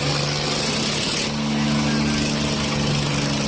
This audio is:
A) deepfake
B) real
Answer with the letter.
B